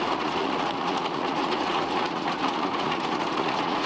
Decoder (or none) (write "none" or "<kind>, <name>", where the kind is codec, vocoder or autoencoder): vocoder, Vocos